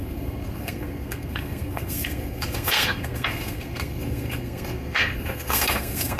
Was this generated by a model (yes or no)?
yes